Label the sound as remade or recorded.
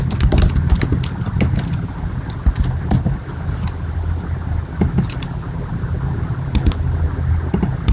recorded